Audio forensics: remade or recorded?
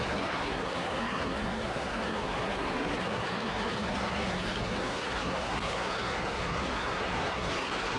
remade